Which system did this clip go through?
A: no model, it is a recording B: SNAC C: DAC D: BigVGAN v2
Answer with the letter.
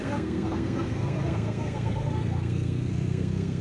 B